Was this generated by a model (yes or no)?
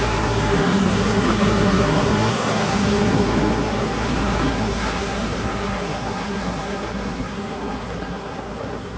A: yes